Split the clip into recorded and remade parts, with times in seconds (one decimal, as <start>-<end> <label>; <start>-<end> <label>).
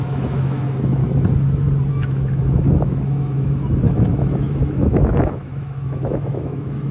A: 0.0-1.0 remade; 1.0-1.9 recorded; 1.9-6.9 remade